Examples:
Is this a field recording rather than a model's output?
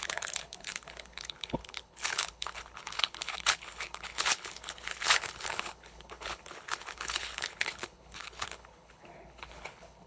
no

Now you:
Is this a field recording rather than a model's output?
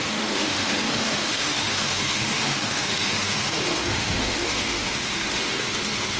no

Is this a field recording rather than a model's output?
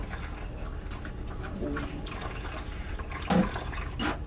yes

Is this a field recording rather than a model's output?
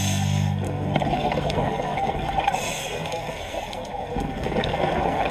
no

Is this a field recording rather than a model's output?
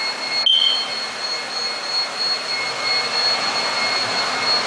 yes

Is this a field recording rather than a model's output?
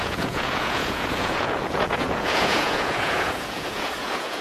no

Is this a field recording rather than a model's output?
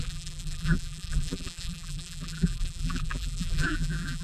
no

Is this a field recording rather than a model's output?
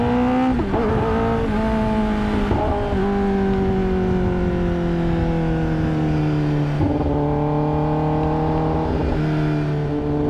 yes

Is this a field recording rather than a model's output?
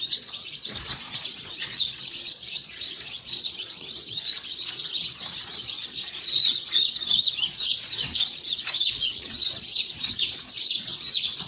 no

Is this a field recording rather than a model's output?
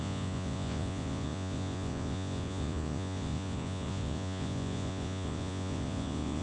no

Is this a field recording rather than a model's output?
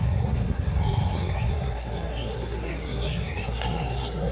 no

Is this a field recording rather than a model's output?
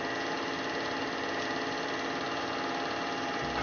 yes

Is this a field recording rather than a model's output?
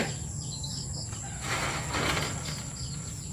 yes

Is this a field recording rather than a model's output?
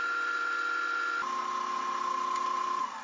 yes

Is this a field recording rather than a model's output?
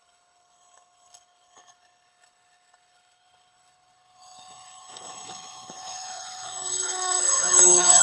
no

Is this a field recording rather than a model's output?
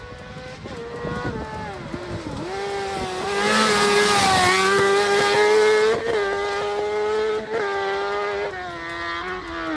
yes